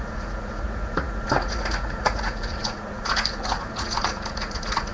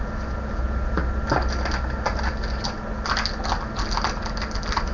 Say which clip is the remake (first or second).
first